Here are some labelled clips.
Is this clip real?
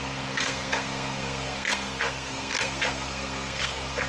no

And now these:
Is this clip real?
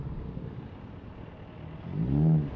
yes